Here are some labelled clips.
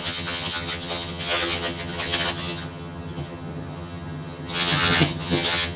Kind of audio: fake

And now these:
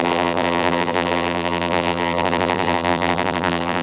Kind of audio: fake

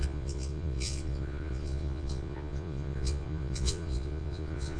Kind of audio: fake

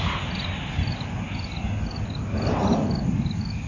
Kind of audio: real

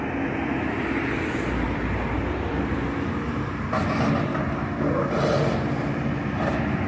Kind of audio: real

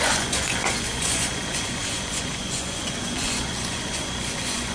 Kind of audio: fake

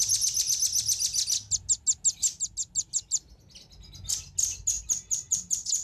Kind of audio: real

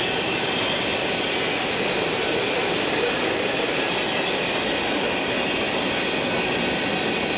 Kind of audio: real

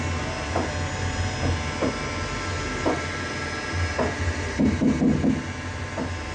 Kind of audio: real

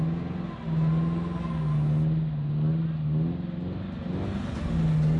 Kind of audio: real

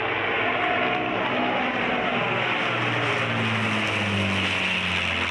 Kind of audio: real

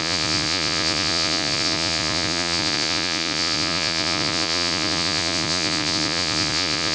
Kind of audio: fake